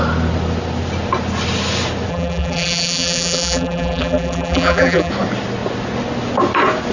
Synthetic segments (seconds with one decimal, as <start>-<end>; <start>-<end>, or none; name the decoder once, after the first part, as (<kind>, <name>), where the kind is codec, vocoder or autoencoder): 2.1-5.1 (vocoder, BigVGAN v2)